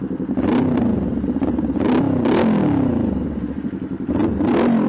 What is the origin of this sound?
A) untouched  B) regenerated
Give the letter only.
A